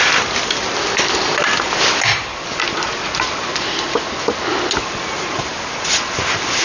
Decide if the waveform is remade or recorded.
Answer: recorded